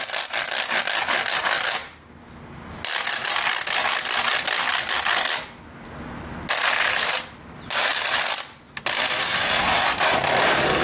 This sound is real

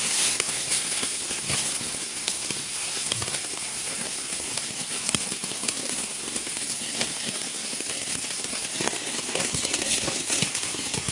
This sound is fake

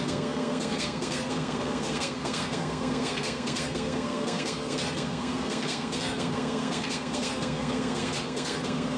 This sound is fake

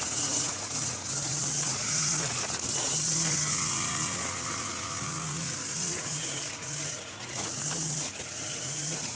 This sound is fake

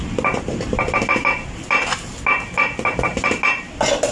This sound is real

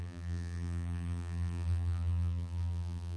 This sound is fake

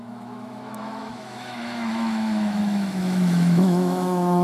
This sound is fake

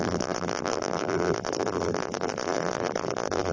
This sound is fake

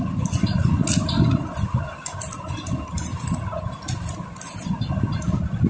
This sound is real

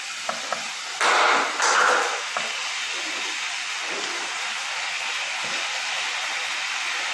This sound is real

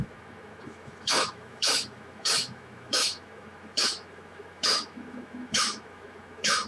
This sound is fake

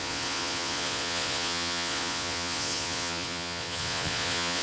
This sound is fake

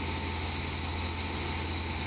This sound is real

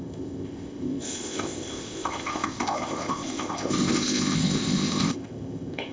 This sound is fake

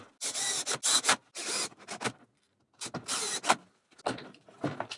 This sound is real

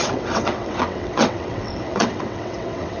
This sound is fake